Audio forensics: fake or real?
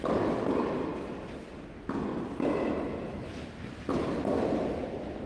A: real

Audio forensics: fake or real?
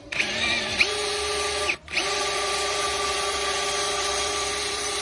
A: fake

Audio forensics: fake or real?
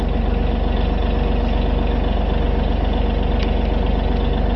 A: real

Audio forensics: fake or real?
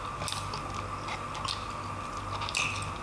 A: real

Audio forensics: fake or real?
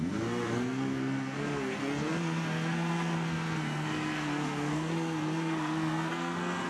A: fake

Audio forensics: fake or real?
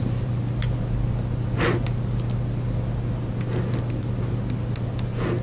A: real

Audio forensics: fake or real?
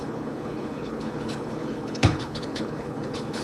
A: fake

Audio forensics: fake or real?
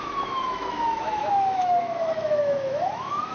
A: fake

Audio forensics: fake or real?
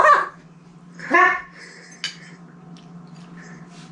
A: real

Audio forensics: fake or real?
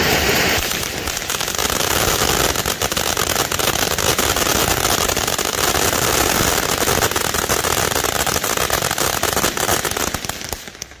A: real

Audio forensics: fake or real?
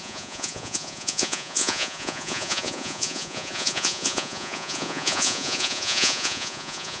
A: fake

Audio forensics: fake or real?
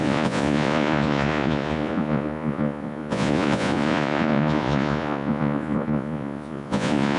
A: fake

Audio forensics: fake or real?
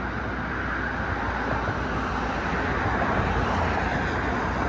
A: real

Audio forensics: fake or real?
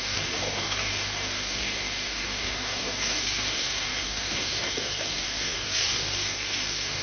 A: fake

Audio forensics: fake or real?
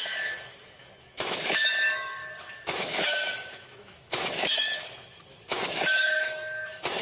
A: fake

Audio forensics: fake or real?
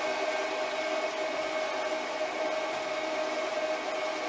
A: real